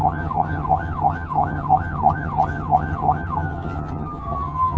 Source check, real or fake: fake